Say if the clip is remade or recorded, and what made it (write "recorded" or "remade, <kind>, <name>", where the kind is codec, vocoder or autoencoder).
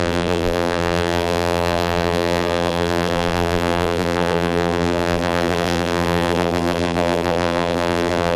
remade, vocoder, BigVGAN v2